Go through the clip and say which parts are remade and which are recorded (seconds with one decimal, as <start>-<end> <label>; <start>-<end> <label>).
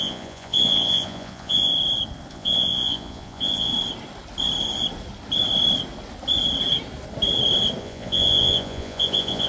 0.0-1.7 remade; 1.7-2.3 recorded; 2.3-3.7 remade; 3.7-7.8 recorded; 7.8-9.5 remade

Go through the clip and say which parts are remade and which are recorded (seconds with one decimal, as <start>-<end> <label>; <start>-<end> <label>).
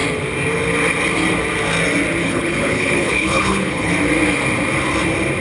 0.0-2.2 recorded; 2.2-3.9 remade; 3.9-5.4 recorded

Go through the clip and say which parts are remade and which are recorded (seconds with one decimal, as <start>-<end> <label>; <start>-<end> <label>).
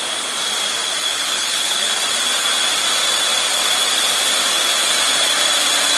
0.0-1.0 recorded; 1.0-1.9 remade; 1.9-6.0 recorded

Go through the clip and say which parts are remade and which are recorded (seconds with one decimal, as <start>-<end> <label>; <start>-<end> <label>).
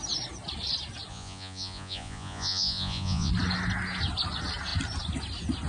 0.0-1.1 recorded; 1.1-3.3 remade; 3.3-5.7 recorded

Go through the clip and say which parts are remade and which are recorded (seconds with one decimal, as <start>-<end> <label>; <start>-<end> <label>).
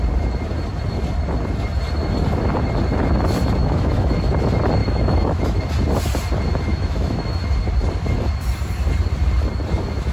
0.0-3.6 recorded; 3.6-4.2 remade; 4.2-4.8 recorded; 4.8-5.6 remade; 5.6-6.7 recorded; 6.7-7.4 remade; 7.4-10.1 recorded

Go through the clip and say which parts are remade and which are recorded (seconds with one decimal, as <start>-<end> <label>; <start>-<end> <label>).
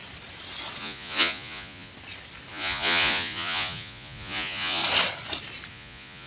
0.0-0.8 recorded; 0.8-1.9 remade; 1.9-2.5 recorded; 2.5-4.8 remade; 4.8-5.7 recorded; 5.7-6.3 remade